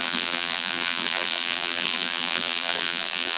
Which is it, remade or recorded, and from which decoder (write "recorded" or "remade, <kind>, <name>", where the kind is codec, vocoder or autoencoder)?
remade, vocoder, BigVGAN v2